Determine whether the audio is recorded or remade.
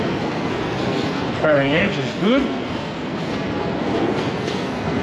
remade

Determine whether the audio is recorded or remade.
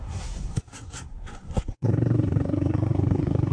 remade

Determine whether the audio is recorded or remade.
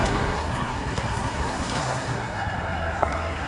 remade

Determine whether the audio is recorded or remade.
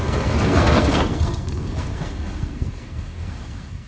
remade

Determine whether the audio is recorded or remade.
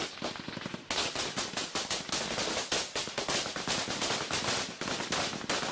recorded